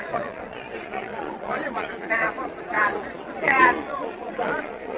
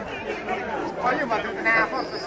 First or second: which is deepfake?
first